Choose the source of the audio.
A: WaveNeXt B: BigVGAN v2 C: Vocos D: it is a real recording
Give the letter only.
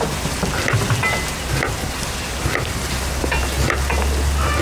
D